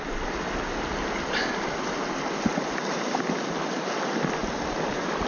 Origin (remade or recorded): recorded